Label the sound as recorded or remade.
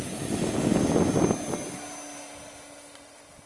recorded